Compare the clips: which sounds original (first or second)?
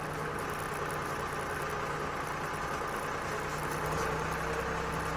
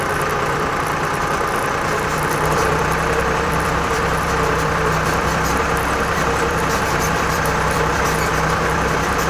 first